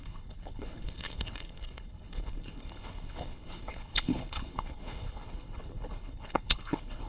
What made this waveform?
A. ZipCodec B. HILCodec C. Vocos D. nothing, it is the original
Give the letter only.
B